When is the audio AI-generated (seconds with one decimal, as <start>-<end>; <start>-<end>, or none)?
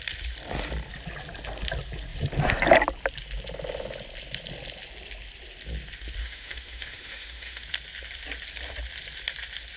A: 6.2-7.6